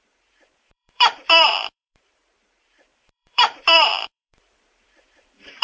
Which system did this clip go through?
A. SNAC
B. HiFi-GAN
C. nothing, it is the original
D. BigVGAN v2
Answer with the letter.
D